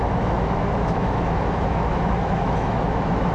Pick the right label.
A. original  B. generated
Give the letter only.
B